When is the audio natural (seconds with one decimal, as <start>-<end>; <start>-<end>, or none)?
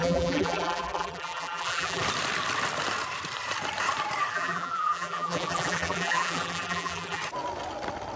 2.0-4.3; 7.2-8.2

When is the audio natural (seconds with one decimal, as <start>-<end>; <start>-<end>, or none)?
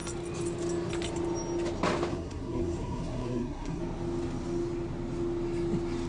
0.0-2.1; 3.8-6.1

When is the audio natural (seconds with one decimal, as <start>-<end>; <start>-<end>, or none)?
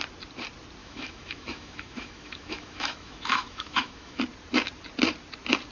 0.0-0.8; 4.2-5.7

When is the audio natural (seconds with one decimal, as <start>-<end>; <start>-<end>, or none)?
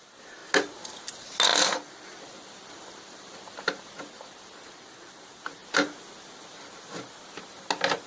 0.0-1.5; 3.8-8.1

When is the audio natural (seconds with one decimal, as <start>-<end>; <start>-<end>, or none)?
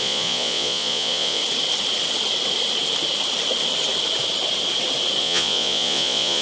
1.4-5.2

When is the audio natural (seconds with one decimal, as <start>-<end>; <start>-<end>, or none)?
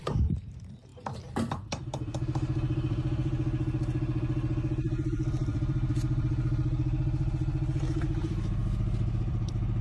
0.9-1.5; 8.6-9.2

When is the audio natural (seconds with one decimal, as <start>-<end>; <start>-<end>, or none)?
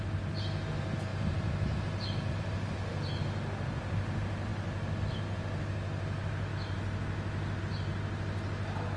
0.0-9.0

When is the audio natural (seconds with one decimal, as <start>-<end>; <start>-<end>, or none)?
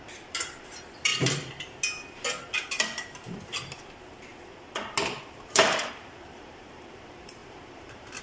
1.1-5.5